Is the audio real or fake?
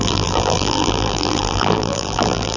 fake